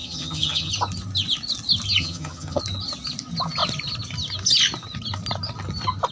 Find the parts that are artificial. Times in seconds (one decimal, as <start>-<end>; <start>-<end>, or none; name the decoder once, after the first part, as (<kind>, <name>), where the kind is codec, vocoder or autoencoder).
0.0-0.7 (vocoder, HiFi-GAN); 2.0-2.6